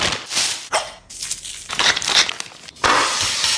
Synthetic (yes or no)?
no